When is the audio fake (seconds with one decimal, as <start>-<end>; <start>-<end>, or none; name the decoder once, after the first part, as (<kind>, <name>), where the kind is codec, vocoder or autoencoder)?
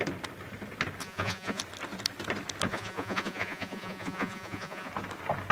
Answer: 1.0-1.6 (vocoder, Vocos); 2.7-4.9